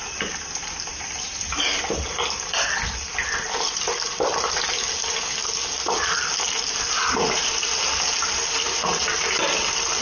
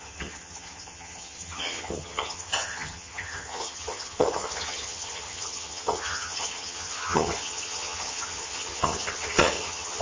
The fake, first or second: second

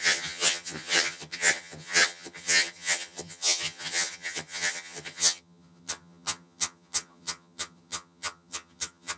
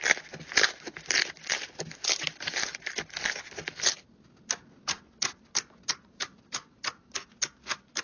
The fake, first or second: first